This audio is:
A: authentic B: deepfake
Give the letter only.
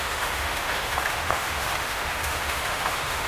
B